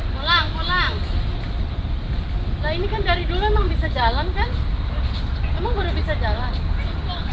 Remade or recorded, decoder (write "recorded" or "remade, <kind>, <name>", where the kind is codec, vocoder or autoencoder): recorded